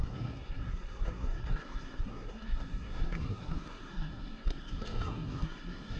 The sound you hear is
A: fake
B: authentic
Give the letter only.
A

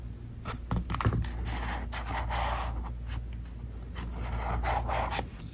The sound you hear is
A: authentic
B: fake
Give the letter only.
A